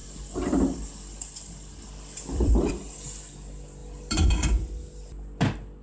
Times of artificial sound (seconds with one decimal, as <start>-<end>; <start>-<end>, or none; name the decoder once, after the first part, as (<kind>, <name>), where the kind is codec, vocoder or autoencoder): 0.0-2.7 (vocoder, BigVGAN v2); 3.8-4.8